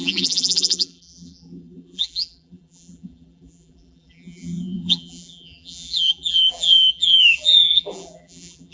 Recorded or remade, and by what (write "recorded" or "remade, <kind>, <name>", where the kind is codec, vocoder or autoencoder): remade, vocoder, BigVGAN v2